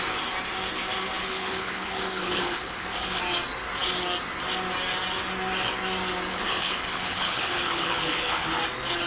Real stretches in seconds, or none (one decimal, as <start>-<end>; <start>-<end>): 0.0-1.2; 3.2-6.3; 8.6-9.1